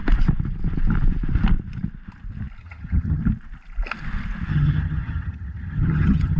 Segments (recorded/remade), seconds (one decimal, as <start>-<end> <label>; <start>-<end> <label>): 0.0-2.6 recorded; 2.6-3.2 remade; 3.2-4.5 recorded; 4.5-6.4 remade